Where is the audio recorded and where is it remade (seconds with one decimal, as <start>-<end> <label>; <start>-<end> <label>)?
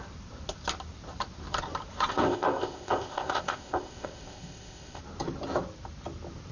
0.0-2.1 recorded; 2.1-5.0 remade; 5.0-6.5 recorded